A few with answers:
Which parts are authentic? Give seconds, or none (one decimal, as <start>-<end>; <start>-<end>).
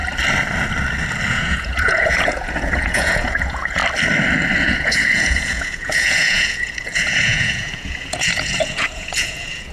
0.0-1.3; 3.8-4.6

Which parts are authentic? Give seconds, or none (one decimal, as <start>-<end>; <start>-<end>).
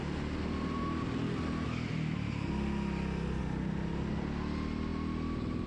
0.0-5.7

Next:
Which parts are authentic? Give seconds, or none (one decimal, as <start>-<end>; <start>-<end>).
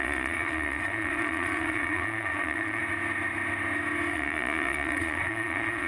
2.8-4.1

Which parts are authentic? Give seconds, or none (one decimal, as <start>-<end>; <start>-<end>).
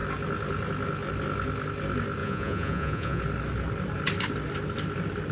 0.0-2.2; 3.2-5.3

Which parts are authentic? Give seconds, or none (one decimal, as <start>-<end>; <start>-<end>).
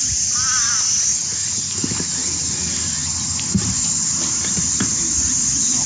0.0-1.1; 1.8-5.9